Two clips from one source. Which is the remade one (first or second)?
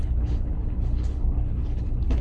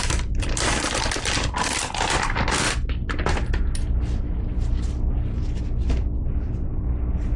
first